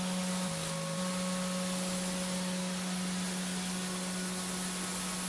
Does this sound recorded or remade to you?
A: recorded